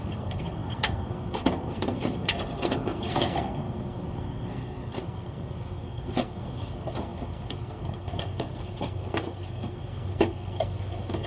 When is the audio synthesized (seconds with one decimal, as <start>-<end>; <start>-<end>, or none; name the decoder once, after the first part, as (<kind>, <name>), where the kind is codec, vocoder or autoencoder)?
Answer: 0.0-11.3 (codec, SNAC)